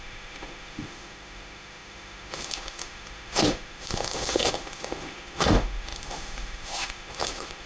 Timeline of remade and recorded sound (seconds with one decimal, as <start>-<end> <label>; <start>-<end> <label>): 0.0-7.7 remade